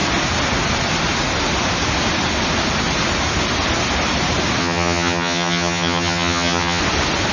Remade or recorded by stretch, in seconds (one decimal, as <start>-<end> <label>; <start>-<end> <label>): 0.0-4.6 recorded; 4.6-6.8 remade; 6.8-7.3 recorded